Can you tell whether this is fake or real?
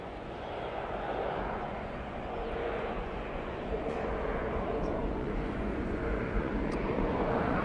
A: fake